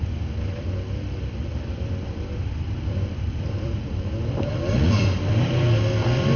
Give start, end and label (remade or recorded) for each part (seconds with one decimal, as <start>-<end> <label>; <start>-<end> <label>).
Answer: 0.0-6.4 remade